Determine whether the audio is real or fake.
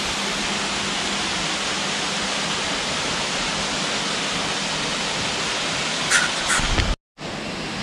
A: real